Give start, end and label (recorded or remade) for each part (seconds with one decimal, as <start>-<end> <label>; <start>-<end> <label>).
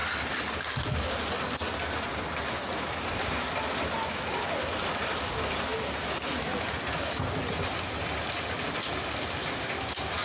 0.0-10.2 recorded